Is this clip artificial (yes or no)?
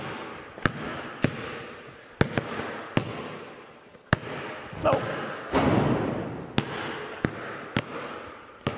no